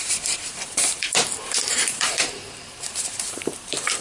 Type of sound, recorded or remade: remade